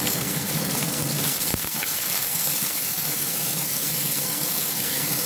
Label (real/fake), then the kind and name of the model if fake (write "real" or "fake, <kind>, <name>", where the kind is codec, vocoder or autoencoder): fake, codec, SNAC